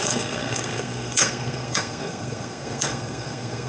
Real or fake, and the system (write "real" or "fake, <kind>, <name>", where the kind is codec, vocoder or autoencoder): fake, codec, SNAC